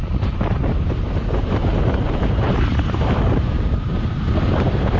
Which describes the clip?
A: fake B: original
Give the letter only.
A